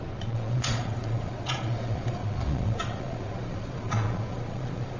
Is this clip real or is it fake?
fake